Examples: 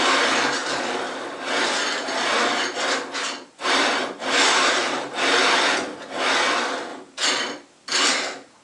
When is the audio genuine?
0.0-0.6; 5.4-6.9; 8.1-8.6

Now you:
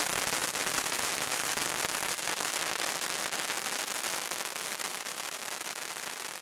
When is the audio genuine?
0.0-0.4; 2.5-4.9; 5.4-6.4

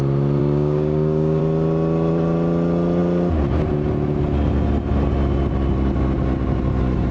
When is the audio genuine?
0.0-0.4; 1.4-7.1

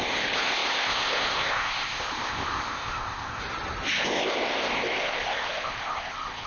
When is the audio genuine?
3.4-3.9